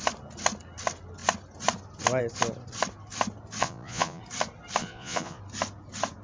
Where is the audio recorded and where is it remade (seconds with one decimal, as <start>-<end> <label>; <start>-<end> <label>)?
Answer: 0.0-3.6 recorded; 3.6-4.2 remade; 4.2-4.8 recorded; 4.8-5.4 remade; 5.4-6.2 recorded

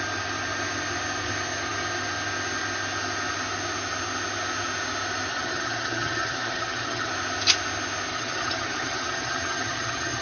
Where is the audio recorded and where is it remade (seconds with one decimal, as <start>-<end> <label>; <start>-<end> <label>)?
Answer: 0.0-5.3 recorded; 5.3-7.1 remade; 7.1-8.1 recorded; 8.1-10.2 remade

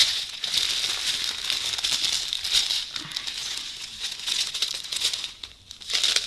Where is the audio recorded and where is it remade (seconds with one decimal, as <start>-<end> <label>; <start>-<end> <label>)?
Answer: 0.0-0.5 remade; 0.5-3.4 recorded; 3.4-5.6 remade; 5.6-6.3 recorded

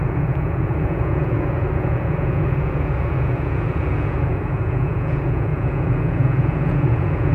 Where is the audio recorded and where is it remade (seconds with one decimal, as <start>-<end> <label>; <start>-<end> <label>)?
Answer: 0.0-7.3 remade

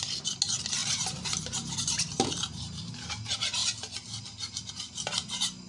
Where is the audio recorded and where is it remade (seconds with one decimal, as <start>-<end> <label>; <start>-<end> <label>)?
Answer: 0.0-0.8 recorded; 0.8-2.8 remade; 2.8-5.7 recorded

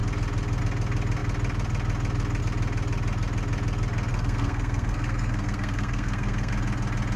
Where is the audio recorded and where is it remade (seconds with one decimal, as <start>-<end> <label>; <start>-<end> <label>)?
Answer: 0.0-4.1 recorded; 4.1-6.5 remade; 6.5-7.2 recorded